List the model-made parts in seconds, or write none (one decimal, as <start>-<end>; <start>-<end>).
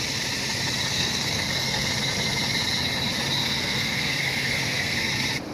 0.9-1.9; 3.4-5.1